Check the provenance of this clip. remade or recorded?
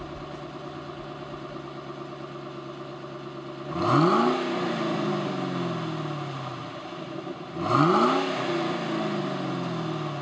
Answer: recorded